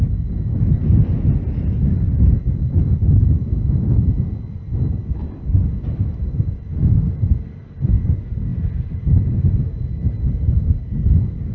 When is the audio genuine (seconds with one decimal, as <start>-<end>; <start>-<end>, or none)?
0.0-11.5